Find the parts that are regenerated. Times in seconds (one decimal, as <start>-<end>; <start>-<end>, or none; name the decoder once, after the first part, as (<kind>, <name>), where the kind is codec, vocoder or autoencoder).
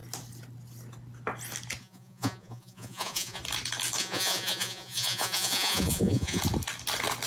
1.8-3.4 (vocoder, Vocos); 4.0-6.4